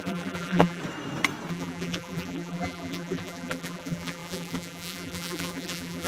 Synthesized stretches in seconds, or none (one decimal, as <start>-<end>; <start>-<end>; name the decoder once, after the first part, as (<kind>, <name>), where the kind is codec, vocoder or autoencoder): 0.0-0.8 (vocoder, BigVGAN v2); 1.5-6.1